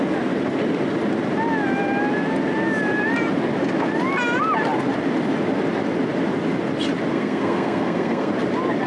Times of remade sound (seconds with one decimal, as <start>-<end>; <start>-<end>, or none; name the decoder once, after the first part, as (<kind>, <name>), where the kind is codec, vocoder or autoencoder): 7.1-8.3 (codec, SNAC)